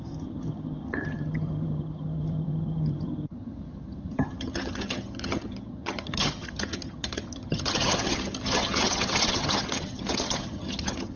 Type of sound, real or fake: fake